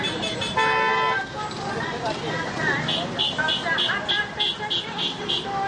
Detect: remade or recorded recorded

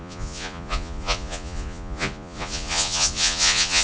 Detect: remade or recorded remade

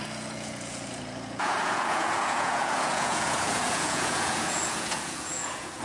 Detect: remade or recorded remade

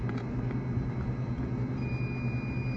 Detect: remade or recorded recorded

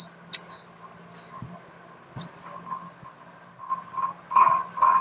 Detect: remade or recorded recorded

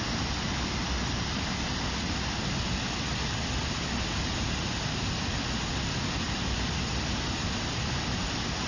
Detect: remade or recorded recorded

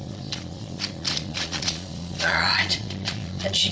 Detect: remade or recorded remade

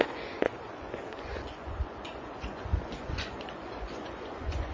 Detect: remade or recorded remade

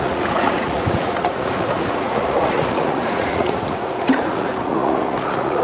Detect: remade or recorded remade